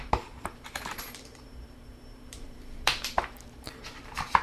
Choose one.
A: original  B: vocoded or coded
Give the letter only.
B